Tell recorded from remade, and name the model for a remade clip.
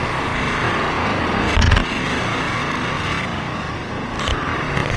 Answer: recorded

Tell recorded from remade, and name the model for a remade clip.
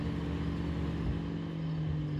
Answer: recorded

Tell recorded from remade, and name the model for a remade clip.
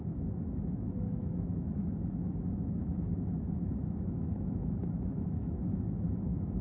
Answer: remade, autoencoder, DAC-VAE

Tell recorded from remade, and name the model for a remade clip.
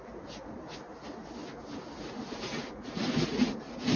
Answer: recorded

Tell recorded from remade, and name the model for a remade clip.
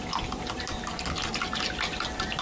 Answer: remade, vocoder, BigVGAN v2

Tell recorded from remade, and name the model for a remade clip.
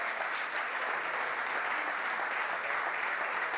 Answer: recorded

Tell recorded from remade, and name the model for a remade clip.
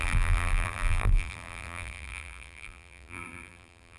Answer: remade, vocoder, BigVGAN v2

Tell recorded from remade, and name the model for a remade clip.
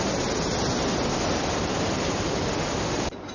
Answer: recorded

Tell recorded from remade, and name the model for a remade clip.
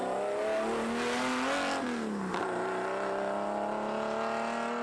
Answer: recorded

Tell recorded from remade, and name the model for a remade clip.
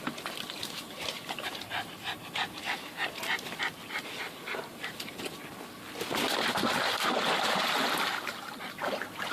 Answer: recorded